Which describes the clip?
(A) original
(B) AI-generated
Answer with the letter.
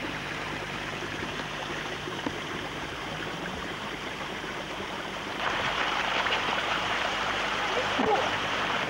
B